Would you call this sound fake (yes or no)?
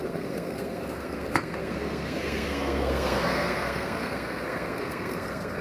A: yes